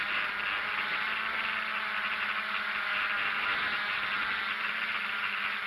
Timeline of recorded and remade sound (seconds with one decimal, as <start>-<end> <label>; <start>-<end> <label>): 0.0-5.7 recorded